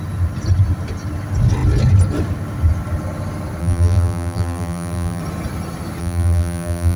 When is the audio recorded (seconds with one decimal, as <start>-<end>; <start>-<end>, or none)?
0.0-3.6; 5.2-6.0